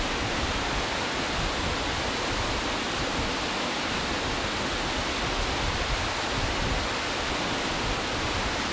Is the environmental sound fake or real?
real